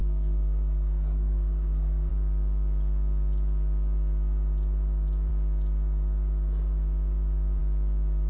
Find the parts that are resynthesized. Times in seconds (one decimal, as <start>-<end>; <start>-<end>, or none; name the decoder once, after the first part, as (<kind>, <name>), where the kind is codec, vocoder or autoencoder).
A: 0.0-2.1 (codec, SNAC)